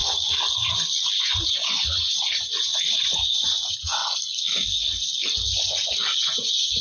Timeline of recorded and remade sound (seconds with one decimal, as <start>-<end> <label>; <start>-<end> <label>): 0.0-1.2 recorded; 1.2-4.0 remade; 4.0-6.2 recorded; 6.2-6.8 remade